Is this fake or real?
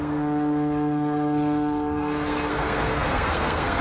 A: fake